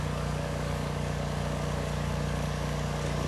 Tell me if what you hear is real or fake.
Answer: fake